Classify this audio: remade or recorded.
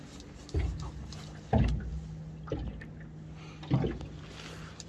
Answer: recorded